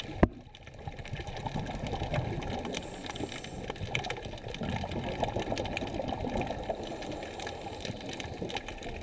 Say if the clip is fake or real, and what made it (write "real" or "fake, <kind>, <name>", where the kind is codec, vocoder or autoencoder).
real